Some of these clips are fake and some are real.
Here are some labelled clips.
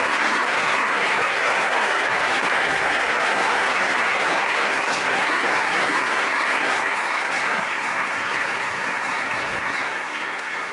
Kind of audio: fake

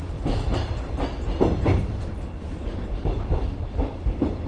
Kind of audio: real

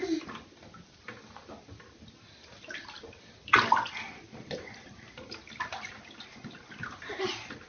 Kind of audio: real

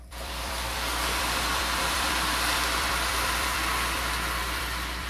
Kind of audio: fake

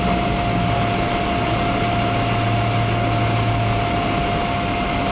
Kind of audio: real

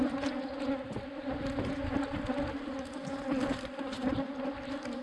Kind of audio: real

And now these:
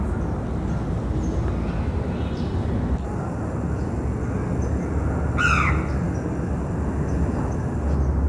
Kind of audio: real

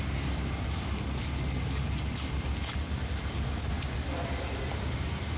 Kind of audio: real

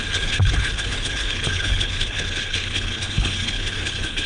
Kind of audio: fake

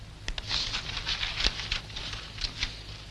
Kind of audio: real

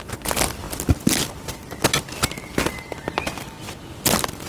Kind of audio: real